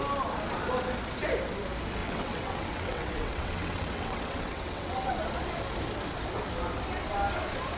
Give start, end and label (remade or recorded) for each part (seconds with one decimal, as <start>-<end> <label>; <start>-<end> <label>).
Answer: 0.0-2.0 recorded; 2.0-5.1 remade; 5.1-7.8 recorded